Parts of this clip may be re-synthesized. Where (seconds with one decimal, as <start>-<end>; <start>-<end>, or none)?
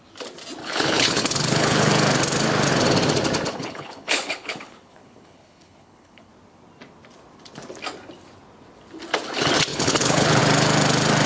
0.6-1.9; 3.5-6.3; 9.7-10.4